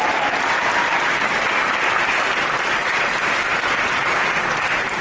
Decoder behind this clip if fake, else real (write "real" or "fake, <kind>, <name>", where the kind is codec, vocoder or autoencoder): real